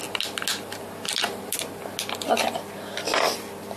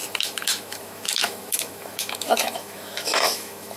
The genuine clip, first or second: first